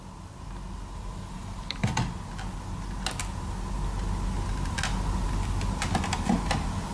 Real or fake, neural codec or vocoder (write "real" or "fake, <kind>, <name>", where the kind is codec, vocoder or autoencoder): real